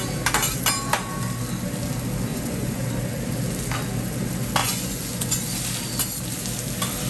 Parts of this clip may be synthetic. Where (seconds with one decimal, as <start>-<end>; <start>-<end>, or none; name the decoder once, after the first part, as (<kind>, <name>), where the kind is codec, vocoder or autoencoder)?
2.3-2.8 (vocoder, Vocos); 4.6-5.4